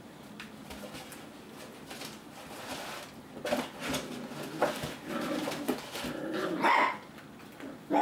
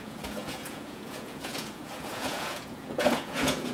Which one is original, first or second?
first